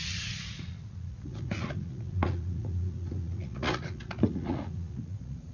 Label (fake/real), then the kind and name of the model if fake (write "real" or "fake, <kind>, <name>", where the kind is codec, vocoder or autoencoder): fake, vocoder, Vocos